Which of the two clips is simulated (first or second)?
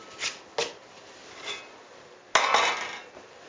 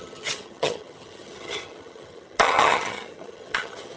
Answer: second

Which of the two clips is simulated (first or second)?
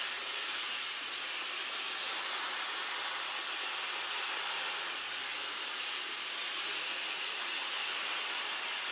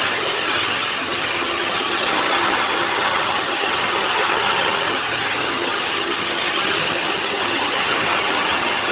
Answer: second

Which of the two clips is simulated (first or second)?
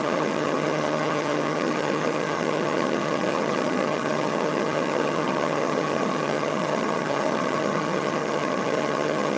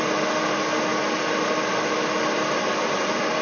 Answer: first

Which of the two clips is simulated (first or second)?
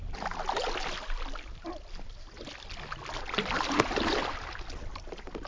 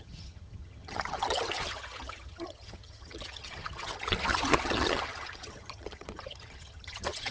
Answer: second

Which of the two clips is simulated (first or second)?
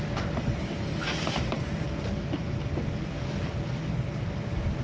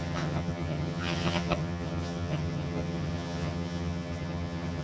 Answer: second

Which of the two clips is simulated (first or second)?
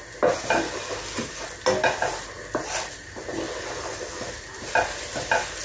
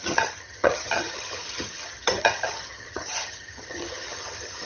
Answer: second